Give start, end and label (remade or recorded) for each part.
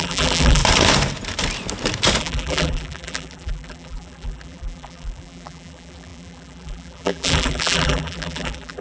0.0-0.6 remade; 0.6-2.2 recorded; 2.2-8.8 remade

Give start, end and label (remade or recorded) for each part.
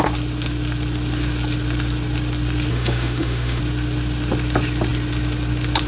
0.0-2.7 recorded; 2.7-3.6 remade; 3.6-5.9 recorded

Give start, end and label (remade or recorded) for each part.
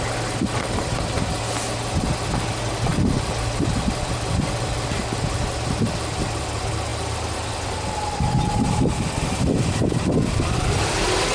0.0-11.3 recorded